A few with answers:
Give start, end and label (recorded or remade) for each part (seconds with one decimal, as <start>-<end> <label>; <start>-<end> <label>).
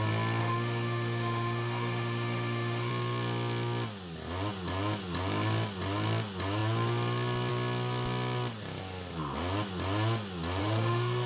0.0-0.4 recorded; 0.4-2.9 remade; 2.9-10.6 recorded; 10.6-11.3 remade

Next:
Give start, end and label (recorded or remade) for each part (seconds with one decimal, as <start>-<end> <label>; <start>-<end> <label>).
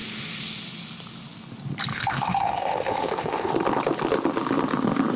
0.0-1.9 recorded; 1.9-3.5 remade; 3.5-5.2 recorded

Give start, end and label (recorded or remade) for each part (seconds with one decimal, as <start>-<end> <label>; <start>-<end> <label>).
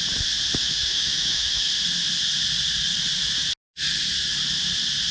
0.0-0.6 recorded; 0.6-1.7 remade; 1.7-5.1 recorded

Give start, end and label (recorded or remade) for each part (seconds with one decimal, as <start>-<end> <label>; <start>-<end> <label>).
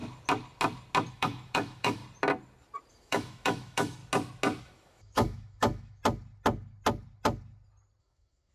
0.0-1.1 recorded; 1.1-2.0 remade; 2.0-2.9 recorded; 2.9-4.0 remade; 4.0-4.6 recorded; 4.6-6.0 remade; 6.0-8.0 recorded; 8.0-8.5 remade